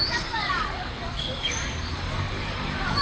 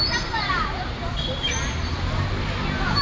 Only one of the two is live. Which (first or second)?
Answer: second